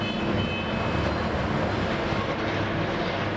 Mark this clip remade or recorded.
recorded